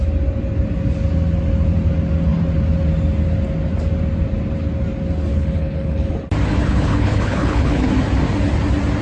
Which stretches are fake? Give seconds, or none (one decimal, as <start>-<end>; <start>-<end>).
5.3-6.1; 6.6-7.9